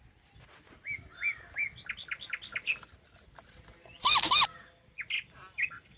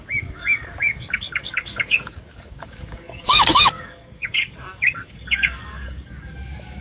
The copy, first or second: second